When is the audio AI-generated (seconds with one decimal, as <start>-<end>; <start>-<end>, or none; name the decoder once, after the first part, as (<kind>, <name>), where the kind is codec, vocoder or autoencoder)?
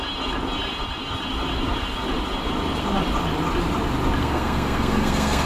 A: 4.2-5.5 (codec, SNAC)